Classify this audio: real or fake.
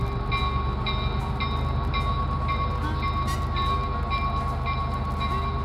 real